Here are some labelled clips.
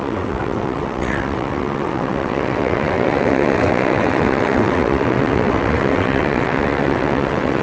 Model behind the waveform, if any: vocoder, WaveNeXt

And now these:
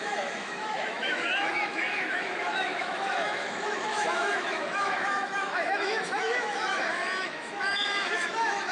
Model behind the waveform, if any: autoencoder, DAC-VAE